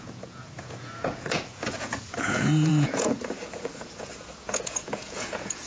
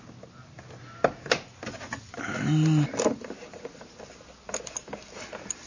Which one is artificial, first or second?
first